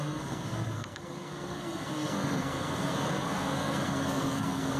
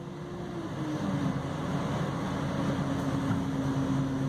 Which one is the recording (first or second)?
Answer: second